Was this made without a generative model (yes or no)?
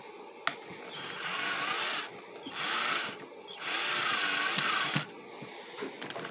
yes